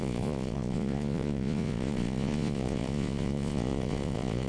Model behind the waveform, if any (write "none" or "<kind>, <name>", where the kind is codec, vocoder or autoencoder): vocoder, Vocos